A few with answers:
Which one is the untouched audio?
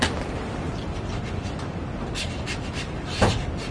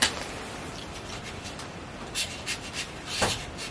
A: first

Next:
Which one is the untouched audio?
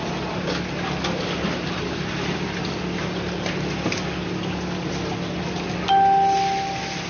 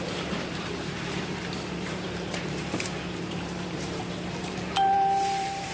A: first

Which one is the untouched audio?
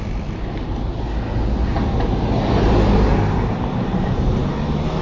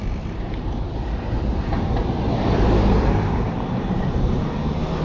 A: first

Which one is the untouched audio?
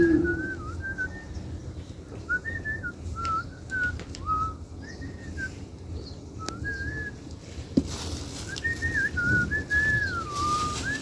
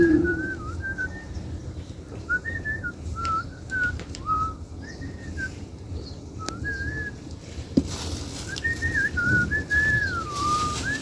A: first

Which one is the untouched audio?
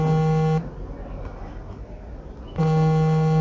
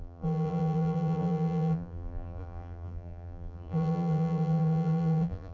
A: first